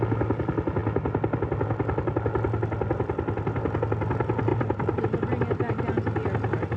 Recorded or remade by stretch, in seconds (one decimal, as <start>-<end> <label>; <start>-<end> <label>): 0.0-4.5 recorded; 4.5-5.0 remade; 5.0-6.8 recorded